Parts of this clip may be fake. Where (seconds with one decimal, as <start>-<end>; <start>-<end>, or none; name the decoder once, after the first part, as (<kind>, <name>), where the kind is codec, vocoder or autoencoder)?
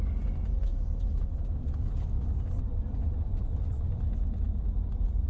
none